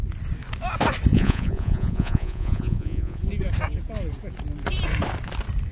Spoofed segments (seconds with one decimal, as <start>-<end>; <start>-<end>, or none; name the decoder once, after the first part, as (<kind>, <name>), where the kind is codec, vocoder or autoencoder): 1.1-3.2 (vocoder, Vocos)